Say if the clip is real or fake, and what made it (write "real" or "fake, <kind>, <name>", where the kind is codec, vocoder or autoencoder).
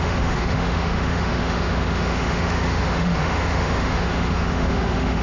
fake, autoencoder, DAC-VAE